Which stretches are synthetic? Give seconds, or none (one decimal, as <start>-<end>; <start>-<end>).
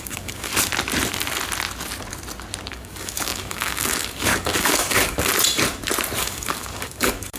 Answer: 0.0-0.5; 2.7-5.3; 6.2-7.4